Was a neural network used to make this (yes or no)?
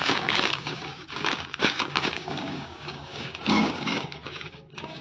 yes